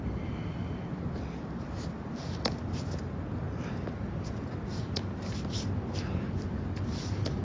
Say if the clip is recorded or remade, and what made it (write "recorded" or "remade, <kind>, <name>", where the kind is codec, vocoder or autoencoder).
recorded